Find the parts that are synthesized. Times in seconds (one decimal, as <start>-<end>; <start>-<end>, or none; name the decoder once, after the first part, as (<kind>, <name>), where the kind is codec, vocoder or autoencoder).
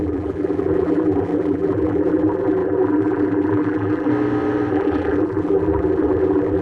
0.0-4.1 (vocoder, BigVGAN v2); 4.7-6.6